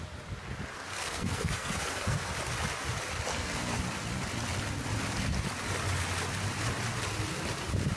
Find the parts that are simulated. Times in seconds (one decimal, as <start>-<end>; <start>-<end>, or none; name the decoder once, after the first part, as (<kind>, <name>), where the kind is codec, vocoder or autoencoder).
0.7-2.3 (codec, SNAC); 3.3-3.8